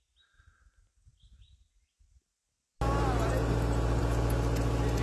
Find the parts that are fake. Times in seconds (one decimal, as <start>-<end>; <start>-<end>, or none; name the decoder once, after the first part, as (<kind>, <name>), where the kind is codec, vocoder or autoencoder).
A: none